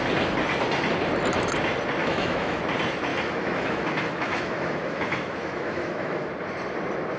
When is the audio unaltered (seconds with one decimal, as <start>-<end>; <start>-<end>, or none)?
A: 0.0-2.0; 2.6-3.1; 6.3-7.2